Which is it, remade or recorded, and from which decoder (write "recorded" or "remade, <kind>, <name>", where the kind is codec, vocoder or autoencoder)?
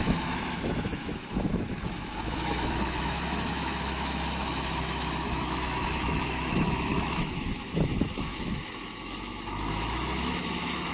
remade, autoencoder, DAC-VAE